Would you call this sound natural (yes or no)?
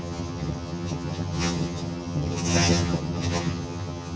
no